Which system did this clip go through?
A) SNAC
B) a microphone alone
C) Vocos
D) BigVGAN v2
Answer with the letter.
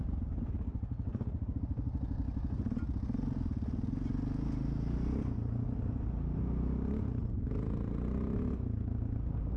B